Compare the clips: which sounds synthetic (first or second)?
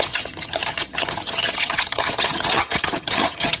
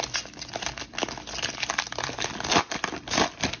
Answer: first